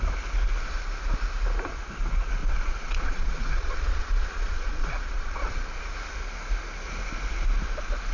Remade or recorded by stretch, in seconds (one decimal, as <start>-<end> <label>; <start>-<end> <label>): 0.0-2.4 recorded; 2.4-5.5 remade; 5.5-8.1 recorded